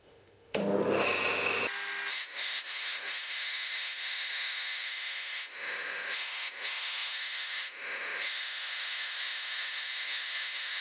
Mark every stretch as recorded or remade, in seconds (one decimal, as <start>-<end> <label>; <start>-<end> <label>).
0.0-0.6 remade; 0.6-2.1 recorded; 2.1-10.8 remade